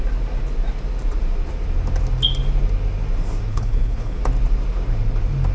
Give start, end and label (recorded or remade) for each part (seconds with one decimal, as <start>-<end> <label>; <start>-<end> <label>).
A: 0.0-3.5 recorded; 3.5-4.2 remade; 4.2-5.5 recorded